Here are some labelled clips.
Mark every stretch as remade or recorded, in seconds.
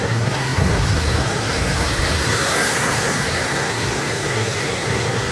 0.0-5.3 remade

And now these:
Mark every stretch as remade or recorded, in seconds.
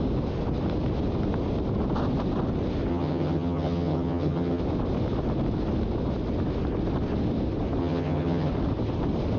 0.0-2.9 recorded; 2.9-4.6 remade; 4.6-7.8 recorded; 7.8-8.5 remade; 8.5-9.4 recorded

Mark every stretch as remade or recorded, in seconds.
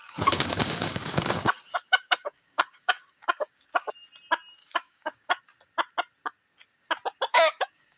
0.0-3.9 remade; 3.9-4.6 recorded; 4.6-5.4 remade; 5.4-7.3 recorded; 7.3-8.0 remade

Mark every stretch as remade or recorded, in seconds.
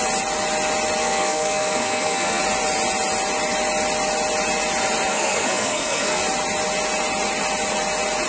0.0-1.0 recorded; 1.0-2.4 remade; 2.4-5.1 recorded; 5.1-6.2 remade; 6.2-8.3 recorded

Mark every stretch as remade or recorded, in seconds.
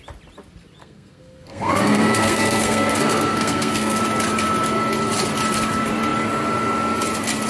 0.0-0.8 recorded; 0.8-4.0 remade; 4.0-7.5 recorded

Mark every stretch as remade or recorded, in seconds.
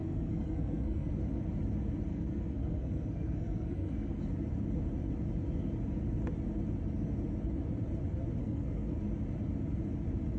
0.0-1.1 remade; 1.1-2.1 recorded; 2.1-4.2 remade; 4.2-8.4 recorded; 8.4-9.0 remade; 9.0-10.4 recorded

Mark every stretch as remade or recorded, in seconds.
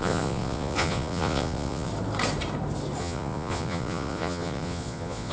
0.0-1.9 remade; 1.9-3.0 recorded; 3.0-5.3 remade